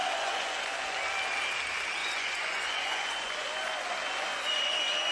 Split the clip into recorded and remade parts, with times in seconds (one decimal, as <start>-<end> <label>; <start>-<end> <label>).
0.0-1.0 remade; 1.0-2.0 recorded; 2.0-5.1 remade